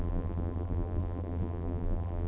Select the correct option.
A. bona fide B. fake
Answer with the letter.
B